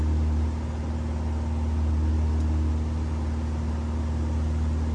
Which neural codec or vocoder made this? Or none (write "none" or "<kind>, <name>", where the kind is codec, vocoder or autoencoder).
none